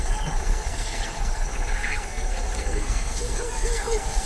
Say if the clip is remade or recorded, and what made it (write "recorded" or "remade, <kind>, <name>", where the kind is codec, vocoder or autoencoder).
remade, codec, SNAC